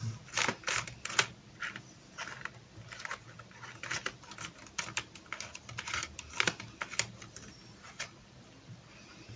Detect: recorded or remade recorded